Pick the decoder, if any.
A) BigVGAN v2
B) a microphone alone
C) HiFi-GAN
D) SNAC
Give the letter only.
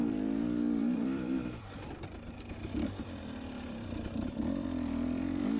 A